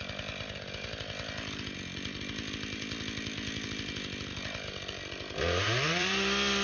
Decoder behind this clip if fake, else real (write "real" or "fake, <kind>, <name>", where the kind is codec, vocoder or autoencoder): fake, vocoder, BigVGAN v2